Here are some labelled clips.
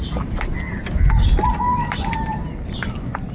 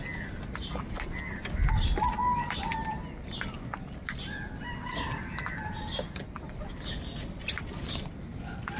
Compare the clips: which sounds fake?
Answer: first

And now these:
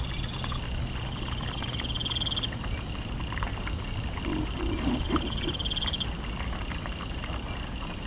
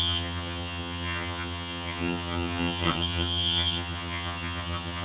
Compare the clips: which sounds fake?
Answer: second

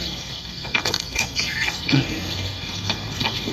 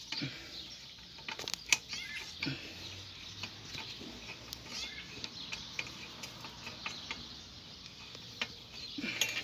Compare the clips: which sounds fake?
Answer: first